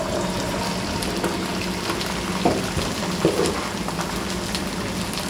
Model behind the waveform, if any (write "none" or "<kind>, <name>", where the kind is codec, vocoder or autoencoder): none